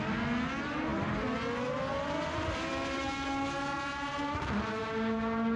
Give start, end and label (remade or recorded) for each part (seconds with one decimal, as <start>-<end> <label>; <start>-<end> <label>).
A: 0.0-5.6 recorded